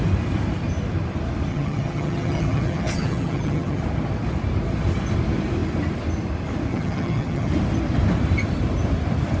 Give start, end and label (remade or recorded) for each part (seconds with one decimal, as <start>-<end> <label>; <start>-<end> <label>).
0.0-1.5 recorded; 1.5-3.8 remade; 3.8-6.7 recorded; 6.7-7.5 remade; 7.5-9.4 recorded

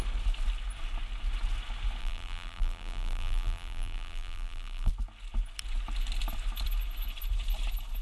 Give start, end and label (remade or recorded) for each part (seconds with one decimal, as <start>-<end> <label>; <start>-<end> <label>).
0.0-2.0 recorded; 2.0-4.9 remade; 4.9-8.0 recorded